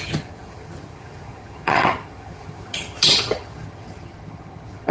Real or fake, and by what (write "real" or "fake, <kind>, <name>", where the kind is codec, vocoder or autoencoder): fake, vocoder, HiFi-GAN